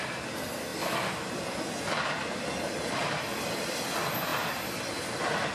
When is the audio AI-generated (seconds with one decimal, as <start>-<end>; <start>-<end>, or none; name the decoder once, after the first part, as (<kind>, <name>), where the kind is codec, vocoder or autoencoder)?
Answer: none